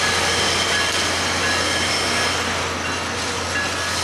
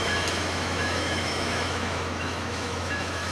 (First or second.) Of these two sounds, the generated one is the second